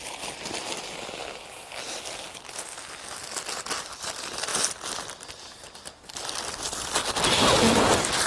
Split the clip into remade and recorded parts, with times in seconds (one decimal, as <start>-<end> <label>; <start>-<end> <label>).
0.0-8.3 recorded